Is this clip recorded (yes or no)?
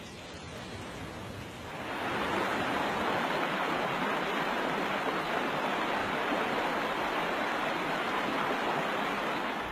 yes